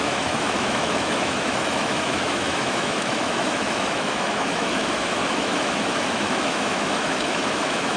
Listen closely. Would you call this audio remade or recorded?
remade